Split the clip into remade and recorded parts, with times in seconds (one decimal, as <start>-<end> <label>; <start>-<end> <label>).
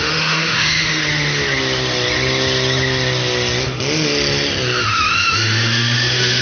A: 0.0-1.0 remade; 1.0-4.8 recorded; 4.8-6.4 remade